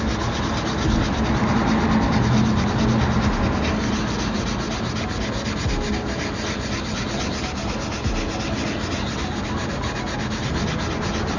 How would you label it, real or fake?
real